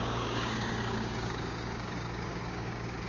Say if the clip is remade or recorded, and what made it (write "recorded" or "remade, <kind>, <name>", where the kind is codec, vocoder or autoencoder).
remade, codec, DAC